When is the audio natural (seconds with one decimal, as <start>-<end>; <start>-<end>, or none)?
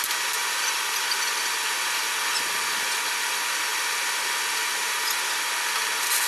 0.0-6.3